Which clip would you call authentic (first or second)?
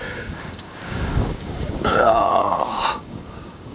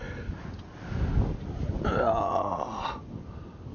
second